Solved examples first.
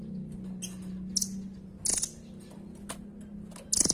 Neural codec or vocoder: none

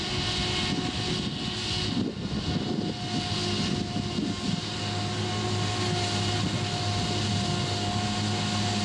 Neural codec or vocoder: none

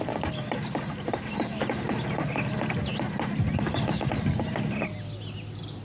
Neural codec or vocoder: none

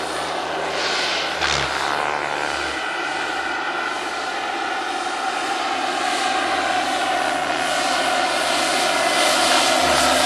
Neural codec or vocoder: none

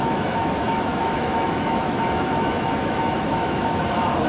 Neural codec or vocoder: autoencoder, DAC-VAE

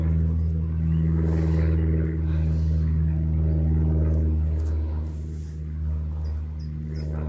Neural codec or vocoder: none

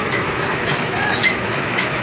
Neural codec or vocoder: autoencoder, DAC-VAE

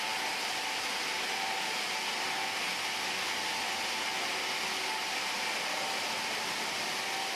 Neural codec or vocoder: none